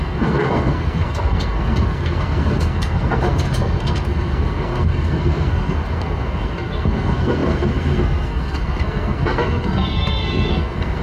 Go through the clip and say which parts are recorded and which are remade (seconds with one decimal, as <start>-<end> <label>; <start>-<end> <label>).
0.0-11.0 remade